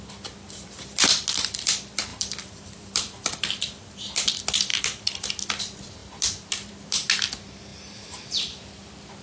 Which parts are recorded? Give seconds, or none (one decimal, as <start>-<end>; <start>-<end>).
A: 0.0-2.1; 3.9-4.7; 5.3-7.7; 8.6-9.2